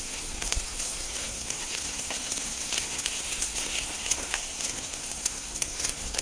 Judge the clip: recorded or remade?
remade